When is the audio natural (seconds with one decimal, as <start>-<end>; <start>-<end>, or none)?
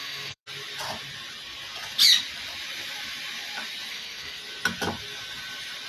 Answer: 0.4-3.9; 4.4-5.9